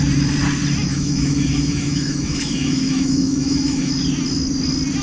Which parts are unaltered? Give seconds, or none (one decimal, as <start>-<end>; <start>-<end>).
0.0-0.9; 3.9-5.0